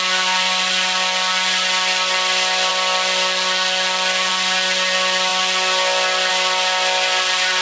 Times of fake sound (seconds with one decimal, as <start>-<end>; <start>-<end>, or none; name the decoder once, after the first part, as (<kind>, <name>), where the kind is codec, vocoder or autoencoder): none